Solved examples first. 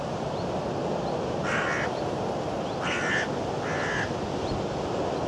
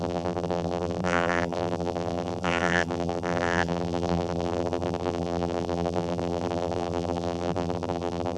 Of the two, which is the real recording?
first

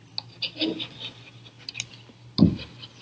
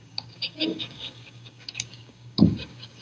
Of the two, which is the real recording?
first